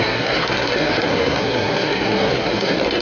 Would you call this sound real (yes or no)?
no